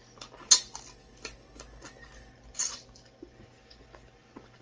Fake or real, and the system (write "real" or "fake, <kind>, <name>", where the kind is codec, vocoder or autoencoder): real